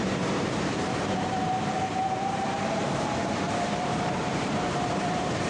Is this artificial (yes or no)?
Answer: yes